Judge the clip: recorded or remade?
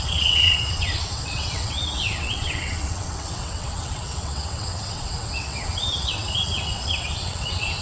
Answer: remade